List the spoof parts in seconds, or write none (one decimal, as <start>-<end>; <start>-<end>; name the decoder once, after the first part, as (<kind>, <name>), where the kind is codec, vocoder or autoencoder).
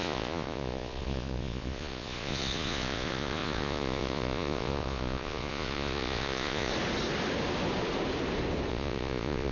0.0-6.7 (vocoder, Vocos); 8.7-9.5